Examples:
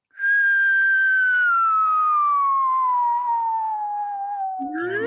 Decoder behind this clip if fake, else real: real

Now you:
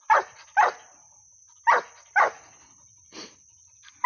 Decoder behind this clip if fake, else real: real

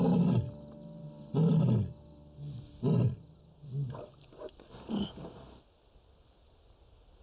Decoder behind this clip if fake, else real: real